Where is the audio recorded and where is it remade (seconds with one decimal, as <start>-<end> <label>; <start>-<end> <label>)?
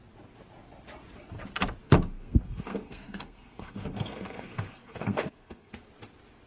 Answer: 0.0-1.8 recorded; 1.8-5.7 remade; 5.7-6.5 recorded